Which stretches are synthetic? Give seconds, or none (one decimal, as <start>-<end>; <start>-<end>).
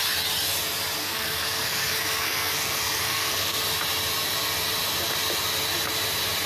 1.0-3.6